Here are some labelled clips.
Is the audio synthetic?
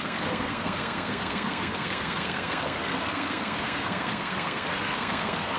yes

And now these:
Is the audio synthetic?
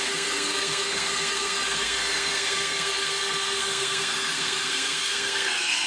yes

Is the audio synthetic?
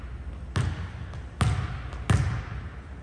no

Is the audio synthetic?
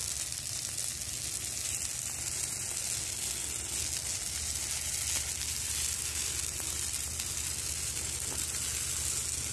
no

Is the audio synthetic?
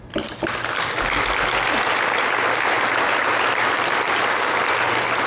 no